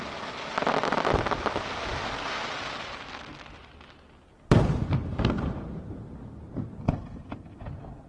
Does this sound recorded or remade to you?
recorded